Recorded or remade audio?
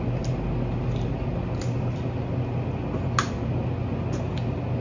recorded